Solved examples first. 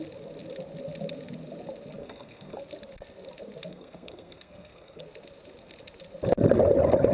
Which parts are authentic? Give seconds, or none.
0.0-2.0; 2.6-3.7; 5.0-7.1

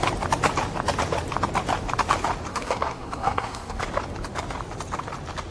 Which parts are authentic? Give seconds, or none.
0.0-2.5; 3.8-5.5

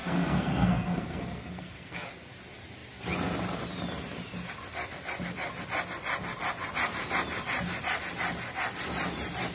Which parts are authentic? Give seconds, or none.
2.1-9.5

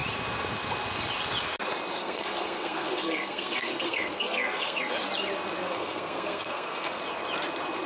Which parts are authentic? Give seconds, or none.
0.0-2.0; 4.9-5.6; 7.0-7.9